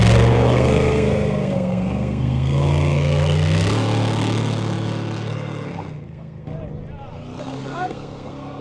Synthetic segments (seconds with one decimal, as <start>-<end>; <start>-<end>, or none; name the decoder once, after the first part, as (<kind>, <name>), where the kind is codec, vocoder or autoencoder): 0.0-6.5 (codec, SNAC); 7.4-8.6